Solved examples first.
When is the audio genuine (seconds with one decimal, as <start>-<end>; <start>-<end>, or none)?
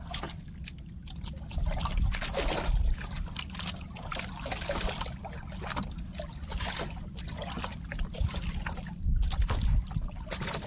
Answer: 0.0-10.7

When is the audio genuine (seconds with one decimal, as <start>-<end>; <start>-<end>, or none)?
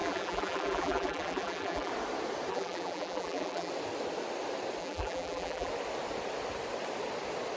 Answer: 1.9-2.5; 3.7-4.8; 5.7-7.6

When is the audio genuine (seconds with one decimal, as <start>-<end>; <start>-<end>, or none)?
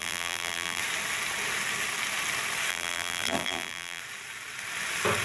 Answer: 0.8-2.7; 4.0-5.2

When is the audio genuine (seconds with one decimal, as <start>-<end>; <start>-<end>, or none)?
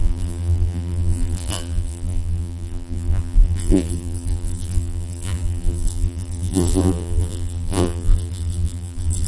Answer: none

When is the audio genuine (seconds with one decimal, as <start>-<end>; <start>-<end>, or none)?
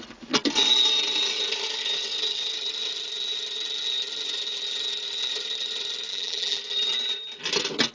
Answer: 0.0-6.1; 6.6-7.9